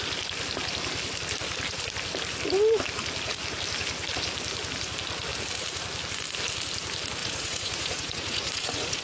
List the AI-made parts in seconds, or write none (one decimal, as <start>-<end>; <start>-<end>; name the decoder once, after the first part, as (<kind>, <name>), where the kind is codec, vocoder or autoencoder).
7.2-9.0 (vocoder, Vocos)